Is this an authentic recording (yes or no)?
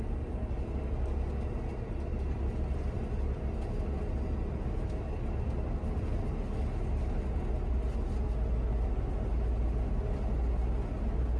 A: yes